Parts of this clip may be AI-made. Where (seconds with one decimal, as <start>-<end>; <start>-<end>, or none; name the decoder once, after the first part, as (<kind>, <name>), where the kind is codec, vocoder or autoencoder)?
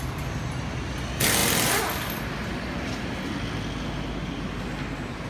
none